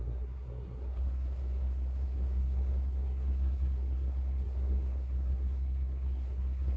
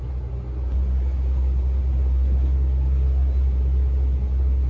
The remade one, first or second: first